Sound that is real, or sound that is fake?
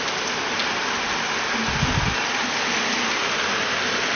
real